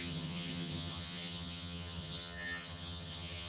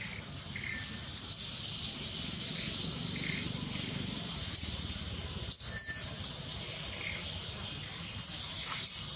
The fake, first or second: first